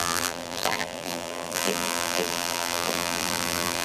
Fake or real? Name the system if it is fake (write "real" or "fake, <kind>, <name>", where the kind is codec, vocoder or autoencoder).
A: fake, vocoder, BigVGAN v2